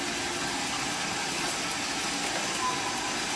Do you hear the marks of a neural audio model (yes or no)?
no